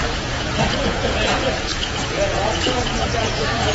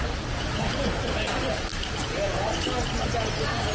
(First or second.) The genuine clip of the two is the second